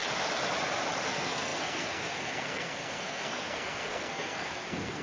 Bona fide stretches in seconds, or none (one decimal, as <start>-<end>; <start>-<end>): 0.0-1.1